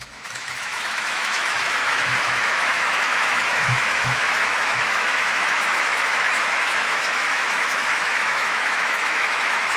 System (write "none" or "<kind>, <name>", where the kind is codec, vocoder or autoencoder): autoencoder, DAC-VAE